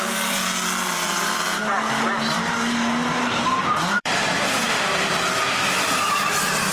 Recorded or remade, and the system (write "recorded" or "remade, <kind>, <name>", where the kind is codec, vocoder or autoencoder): remade, vocoder, BigVGAN v2